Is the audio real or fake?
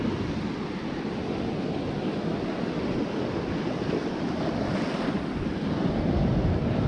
real